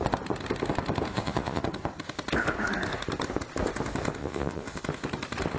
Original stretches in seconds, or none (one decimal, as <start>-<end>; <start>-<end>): 0.0-1.1; 1.6-4.2; 4.8-5.6